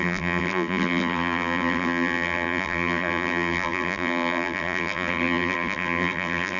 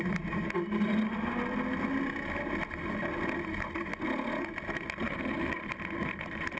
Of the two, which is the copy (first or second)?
first